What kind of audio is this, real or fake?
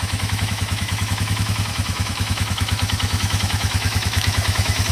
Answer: fake